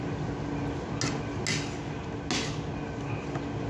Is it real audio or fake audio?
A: real